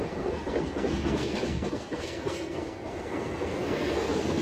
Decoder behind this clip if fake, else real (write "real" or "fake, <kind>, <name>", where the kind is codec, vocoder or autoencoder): fake, codec, SNAC